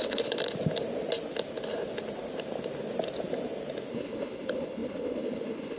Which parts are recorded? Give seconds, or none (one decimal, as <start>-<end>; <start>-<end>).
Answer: 0.4-3.9